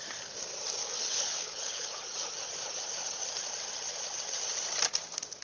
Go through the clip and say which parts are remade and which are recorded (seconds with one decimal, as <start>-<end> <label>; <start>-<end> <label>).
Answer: 0.0-1.0 recorded; 1.0-2.0 remade; 2.0-5.4 recorded